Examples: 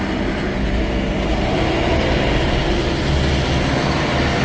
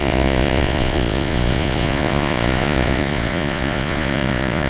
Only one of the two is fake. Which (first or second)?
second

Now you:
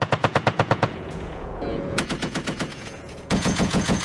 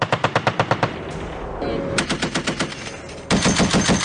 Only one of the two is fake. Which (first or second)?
first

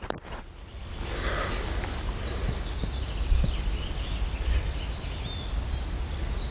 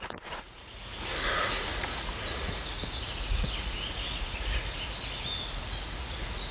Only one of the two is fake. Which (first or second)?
second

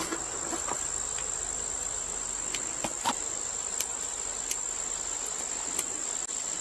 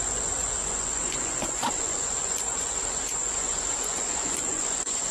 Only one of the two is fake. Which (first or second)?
second